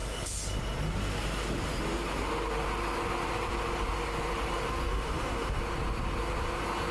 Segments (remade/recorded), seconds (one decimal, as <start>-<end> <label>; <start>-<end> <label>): 0.0-4.9 recorded; 4.9-5.6 remade; 5.6-6.9 recorded